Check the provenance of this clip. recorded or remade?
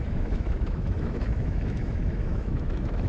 remade